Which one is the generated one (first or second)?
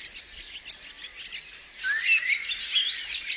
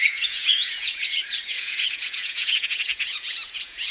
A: second